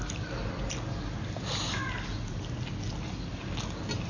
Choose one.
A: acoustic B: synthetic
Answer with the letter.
A